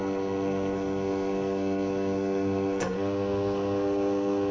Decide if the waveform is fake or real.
fake